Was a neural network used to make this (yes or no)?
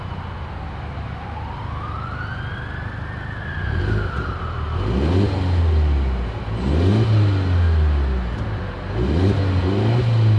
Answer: no